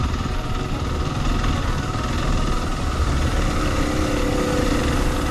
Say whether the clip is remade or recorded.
recorded